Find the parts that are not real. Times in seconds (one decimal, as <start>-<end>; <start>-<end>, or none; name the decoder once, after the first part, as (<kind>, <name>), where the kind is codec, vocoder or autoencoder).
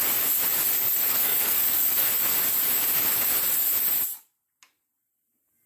1.1-2.1 (codec, SNAC)